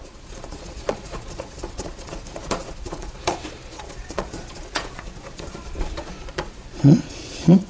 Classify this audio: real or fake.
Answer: fake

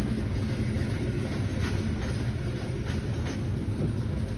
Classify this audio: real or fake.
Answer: real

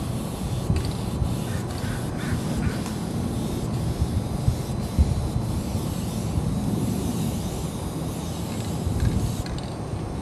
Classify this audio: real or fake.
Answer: real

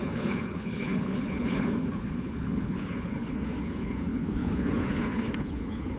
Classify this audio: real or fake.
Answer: fake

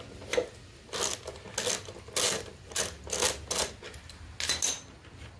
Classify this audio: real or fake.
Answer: real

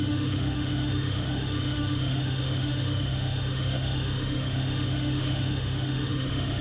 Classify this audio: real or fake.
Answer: fake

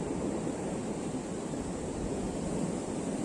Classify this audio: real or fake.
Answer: fake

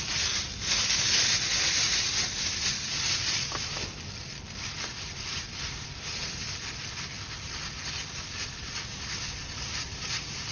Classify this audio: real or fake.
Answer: real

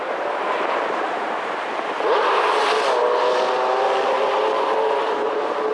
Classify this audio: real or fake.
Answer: real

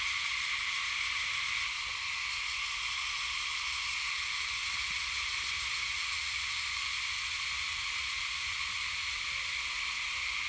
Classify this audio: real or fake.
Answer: real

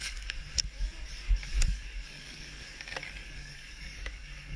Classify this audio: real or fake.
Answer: fake